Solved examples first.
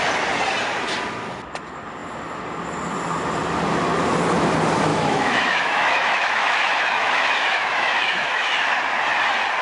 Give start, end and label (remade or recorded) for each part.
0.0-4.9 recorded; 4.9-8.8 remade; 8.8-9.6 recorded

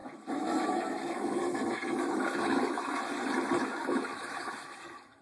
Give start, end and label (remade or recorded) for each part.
0.0-3.1 remade; 3.1-3.6 recorded; 3.6-5.2 remade

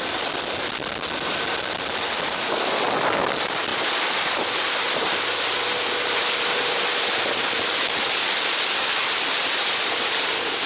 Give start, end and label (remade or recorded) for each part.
0.0-10.7 recorded

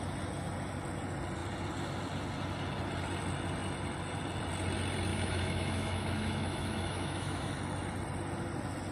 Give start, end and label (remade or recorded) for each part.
0.0-5.1 recorded; 5.1-7.5 remade; 7.5-8.9 recorded

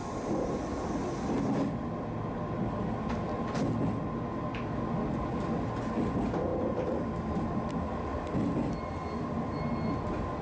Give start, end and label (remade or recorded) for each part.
0.0-10.4 recorded